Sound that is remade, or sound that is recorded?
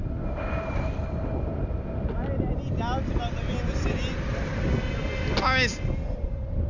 recorded